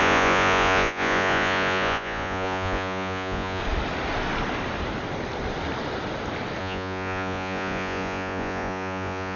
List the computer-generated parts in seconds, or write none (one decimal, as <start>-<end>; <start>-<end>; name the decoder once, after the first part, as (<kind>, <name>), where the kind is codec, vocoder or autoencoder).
0.0-3.6 (vocoder, Vocos); 6.6-9.4